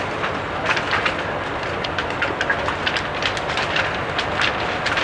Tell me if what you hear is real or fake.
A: real